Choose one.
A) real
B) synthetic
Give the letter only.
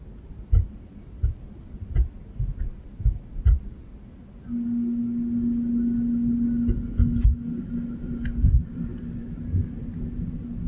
A